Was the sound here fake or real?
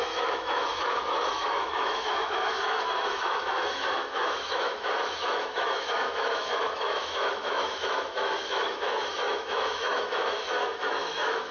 fake